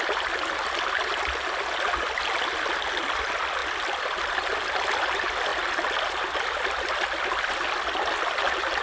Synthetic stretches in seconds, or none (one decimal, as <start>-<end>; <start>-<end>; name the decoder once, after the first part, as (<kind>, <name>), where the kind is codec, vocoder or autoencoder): none